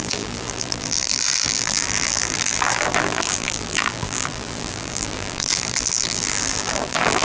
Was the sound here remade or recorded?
remade